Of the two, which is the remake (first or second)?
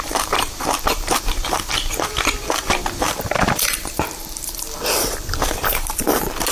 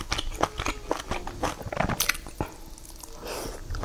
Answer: first